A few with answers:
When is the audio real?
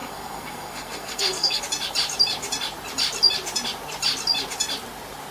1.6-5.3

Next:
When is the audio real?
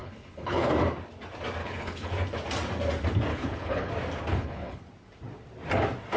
0.7-1.6; 2.1-3.3; 3.9-4.3; 4.8-6.2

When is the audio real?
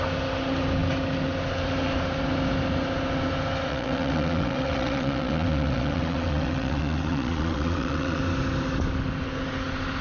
0.0-3.7; 8.2-10.0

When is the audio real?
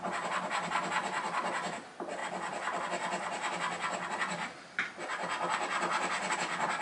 0.0-6.8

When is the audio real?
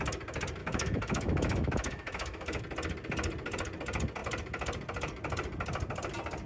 0.0-0.6; 2.6-6.5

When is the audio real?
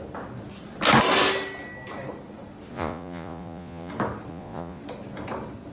0.0-2.7; 3.9-4.3; 4.8-5.7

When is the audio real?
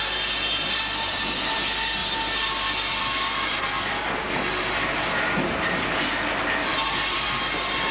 none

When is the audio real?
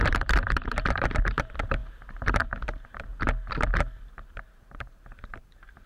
1.8-2.4; 3.1-4.1